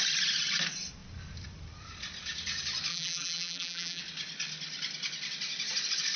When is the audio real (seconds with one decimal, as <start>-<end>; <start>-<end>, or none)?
0.0-2.9; 4.0-6.2